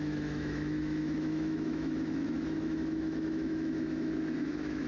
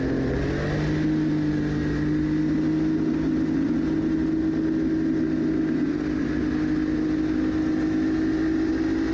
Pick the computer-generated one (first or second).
first